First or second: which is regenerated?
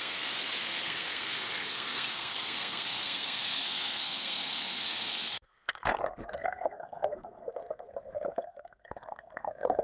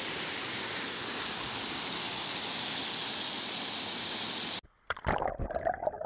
first